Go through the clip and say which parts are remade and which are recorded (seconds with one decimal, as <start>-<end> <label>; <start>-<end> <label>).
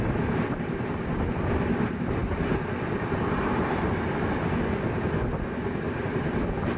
0.0-6.8 recorded